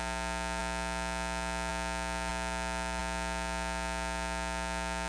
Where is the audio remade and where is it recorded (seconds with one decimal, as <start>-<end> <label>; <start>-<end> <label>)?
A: 0.0-5.1 recorded